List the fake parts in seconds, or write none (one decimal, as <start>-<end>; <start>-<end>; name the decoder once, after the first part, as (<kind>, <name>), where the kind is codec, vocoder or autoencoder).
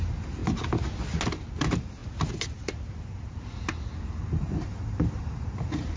0.0-0.4 (vocoder, BigVGAN v2); 1.6-2.0; 4.3-6.0